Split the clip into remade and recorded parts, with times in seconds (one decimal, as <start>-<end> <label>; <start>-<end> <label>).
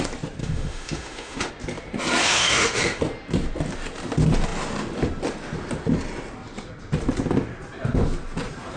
0.0-0.4 recorded; 0.4-1.5 remade; 1.5-2.2 recorded; 2.2-3.0 remade; 3.0-8.8 recorded